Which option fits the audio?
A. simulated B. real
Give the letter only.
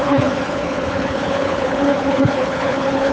A